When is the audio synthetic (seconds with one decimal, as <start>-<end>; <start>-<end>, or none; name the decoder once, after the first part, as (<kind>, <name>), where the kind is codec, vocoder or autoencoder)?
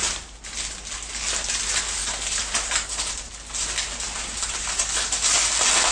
none